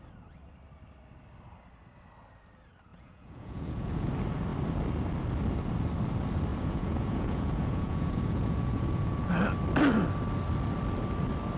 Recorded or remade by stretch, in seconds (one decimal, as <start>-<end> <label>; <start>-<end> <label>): 0.0-2.9 recorded; 2.9-4.1 remade; 4.1-6.5 recorded; 6.5-9.3 remade; 9.3-11.6 recorded